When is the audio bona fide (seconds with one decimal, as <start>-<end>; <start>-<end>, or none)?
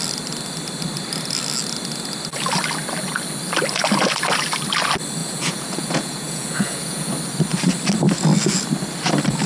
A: 0.0-5.2; 7.1-9.5